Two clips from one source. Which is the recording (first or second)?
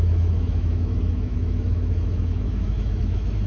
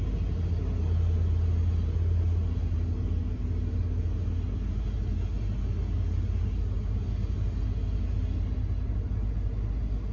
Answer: second